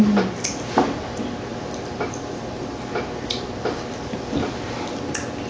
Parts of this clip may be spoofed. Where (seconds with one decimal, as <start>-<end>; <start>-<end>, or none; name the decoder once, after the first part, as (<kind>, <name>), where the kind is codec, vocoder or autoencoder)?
1.5-4.5 (vocoder, BigVGAN v2)